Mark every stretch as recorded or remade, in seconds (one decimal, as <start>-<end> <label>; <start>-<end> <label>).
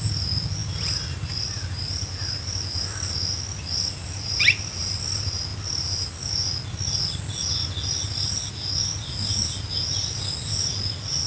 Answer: 0.0-0.6 recorded; 0.6-1.9 remade; 1.9-11.3 recorded